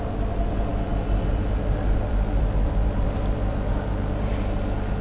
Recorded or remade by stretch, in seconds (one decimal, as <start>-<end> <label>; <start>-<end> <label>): 0.0-0.7 recorded; 0.7-3.7 remade; 3.7-5.0 recorded